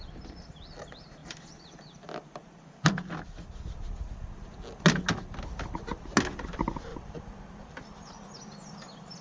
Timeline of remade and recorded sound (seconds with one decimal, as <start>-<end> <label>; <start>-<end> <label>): 0.0-6.9 recorded; 6.9-9.2 remade